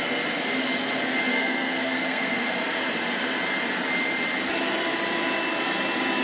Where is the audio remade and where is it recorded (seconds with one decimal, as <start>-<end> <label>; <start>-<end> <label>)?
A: 0.0-1.3 recorded; 1.3-2.5 remade; 2.5-6.2 recorded